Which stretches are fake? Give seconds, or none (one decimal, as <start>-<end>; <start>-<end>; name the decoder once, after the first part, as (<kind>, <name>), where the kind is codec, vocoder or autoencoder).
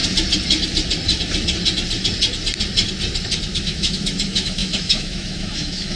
3.6-6.0 (autoencoder, DAC-VAE)